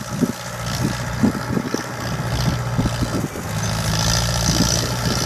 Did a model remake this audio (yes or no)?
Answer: no